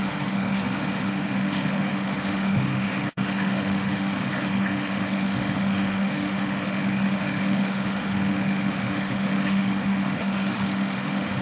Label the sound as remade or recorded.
remade